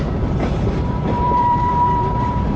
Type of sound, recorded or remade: remade